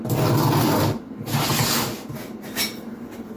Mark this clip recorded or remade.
recorded